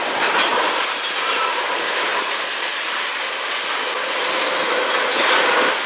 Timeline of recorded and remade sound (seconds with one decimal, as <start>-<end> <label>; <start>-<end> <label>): 0.0-2.1 remade; 2.1-5.9 recorded